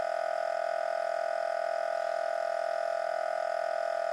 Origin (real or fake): real